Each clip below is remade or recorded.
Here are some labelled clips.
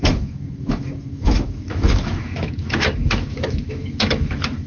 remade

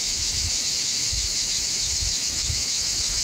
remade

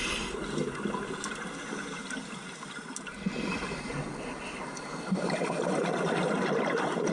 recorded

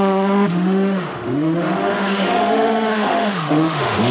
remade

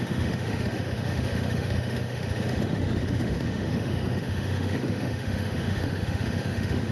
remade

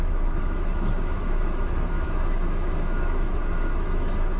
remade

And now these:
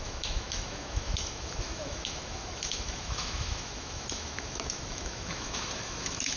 remade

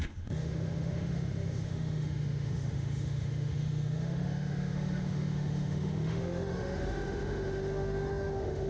remade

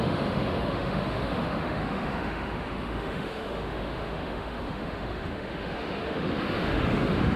remade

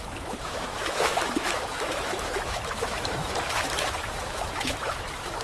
remade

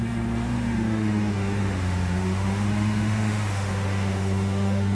remade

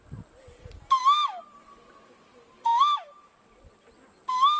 recorded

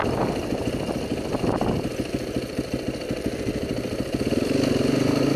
recorded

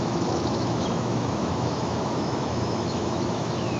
remade